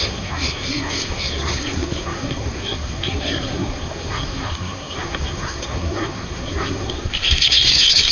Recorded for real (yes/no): no